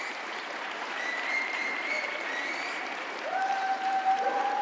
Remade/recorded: remade